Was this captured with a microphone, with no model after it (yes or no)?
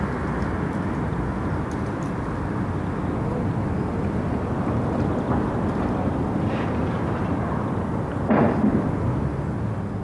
yes